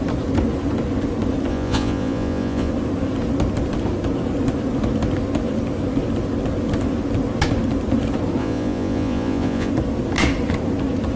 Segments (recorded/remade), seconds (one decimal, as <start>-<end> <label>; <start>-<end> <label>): 0.0-1.5 recorded; 1.5-2.7 remade; 2.7-8.4 recorded; 8.4-9.7 remade; 9.7-11.2 recorded